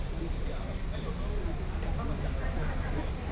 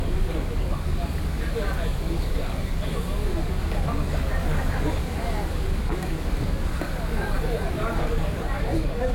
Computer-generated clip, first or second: second